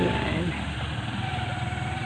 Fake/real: real